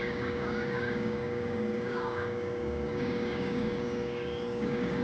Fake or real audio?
fake